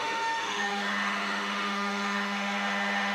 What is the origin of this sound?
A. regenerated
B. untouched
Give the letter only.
A